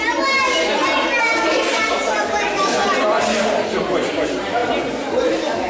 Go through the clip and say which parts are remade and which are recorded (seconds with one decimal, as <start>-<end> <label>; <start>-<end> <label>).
0.0-5.7 recorded